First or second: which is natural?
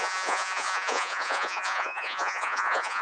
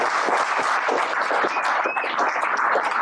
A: second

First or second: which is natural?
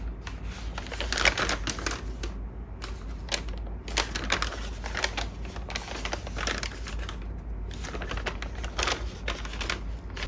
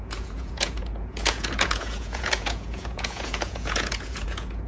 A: first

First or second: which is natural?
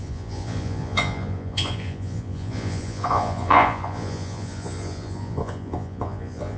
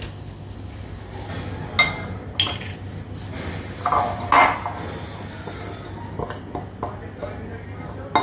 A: second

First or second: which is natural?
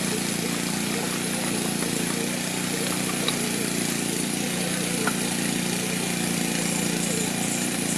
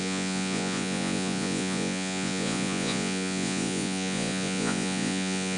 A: first